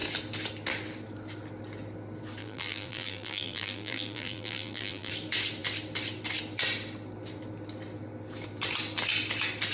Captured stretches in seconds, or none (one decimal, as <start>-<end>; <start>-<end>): 0.0-2.4; 5.1-9.7